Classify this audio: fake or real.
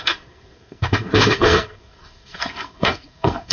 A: fake